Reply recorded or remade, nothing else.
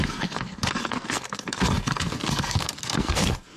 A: remade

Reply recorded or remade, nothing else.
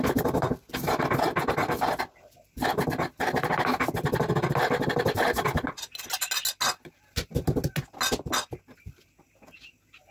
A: recorded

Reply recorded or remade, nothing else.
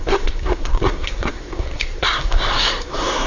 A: remade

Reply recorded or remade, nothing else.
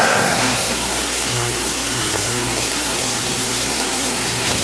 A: remade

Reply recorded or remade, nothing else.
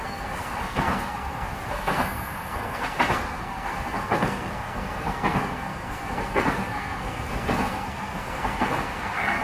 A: remade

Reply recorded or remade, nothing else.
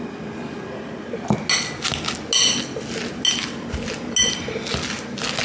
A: recorded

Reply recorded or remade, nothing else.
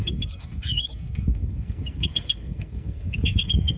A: remade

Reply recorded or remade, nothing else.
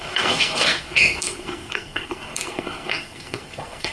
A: remade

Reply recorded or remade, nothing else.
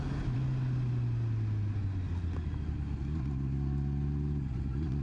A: recorded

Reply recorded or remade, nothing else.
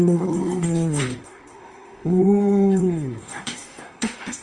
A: remade